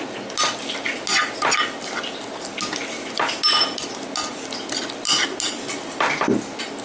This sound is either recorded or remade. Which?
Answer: recorded